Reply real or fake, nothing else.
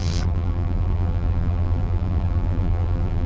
fake